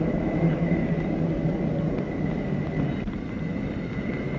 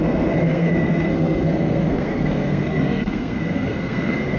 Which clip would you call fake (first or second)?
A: second